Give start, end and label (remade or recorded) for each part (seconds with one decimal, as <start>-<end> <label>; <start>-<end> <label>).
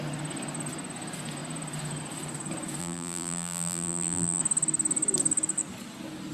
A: 0.0-2.8 recorded; 2.8-4.4 remade; 4.4-6.3 recorded